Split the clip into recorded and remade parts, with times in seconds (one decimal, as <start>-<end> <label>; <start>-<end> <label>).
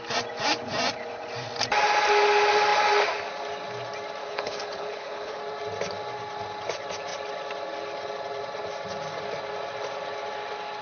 0.0-4.2 recorded; 4.2-5.4 remade; 5.4-10.8 recorded